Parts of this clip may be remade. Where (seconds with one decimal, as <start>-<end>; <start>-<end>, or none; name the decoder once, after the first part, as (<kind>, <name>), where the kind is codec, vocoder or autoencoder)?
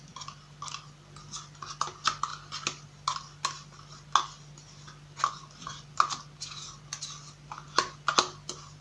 none